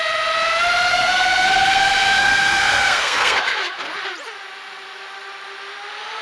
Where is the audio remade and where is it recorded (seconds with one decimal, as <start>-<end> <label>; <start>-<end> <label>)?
0.0-0.9 recorded; 0.9-3.8 remade; 3.8-6.2 recorded